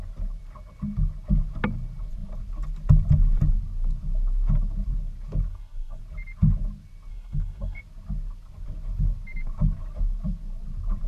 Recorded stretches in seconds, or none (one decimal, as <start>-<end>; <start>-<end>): 0.0-5.5; 6.0-7.1; 7.8-11.1

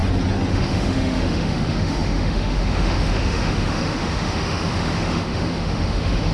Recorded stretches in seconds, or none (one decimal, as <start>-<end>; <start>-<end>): 0.0-0.5